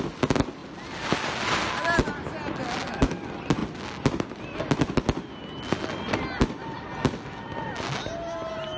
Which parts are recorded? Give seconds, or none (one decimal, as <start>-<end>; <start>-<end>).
0.0-8.8